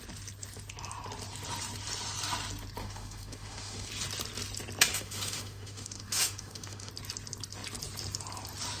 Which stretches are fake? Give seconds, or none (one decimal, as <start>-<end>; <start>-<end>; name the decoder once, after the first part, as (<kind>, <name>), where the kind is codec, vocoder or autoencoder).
2.8-3.9 (autoencoder, DAC-VAE); 4.9-6.9